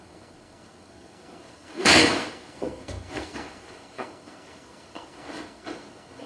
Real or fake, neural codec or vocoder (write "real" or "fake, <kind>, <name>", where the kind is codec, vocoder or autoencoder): fake, codec, SNAC